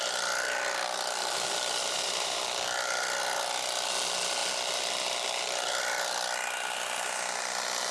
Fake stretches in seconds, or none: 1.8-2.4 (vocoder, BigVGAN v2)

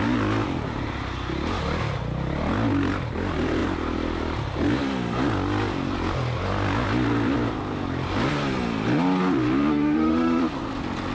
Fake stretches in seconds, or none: 9.7-10.4 (autoencoder, DAC-VAE)

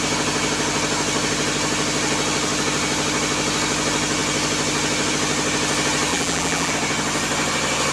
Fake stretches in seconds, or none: 6.1-6.7 (vocoder, BigVGAN v2)

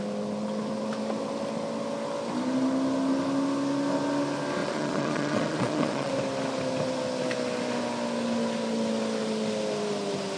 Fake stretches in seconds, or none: 4.6-6.1 (vocoder, Vocos)

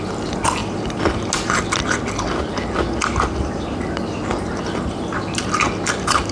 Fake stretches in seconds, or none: none

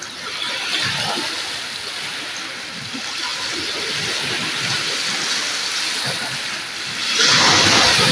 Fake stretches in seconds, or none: none